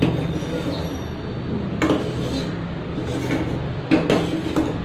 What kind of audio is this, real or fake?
real